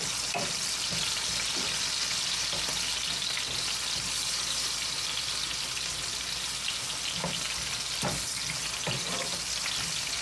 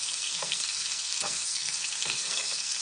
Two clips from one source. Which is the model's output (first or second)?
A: second